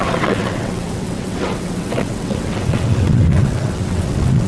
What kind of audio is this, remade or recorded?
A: remade